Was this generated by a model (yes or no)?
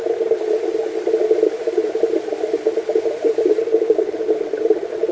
no